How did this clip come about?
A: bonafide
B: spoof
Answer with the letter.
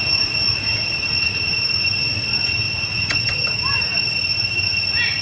A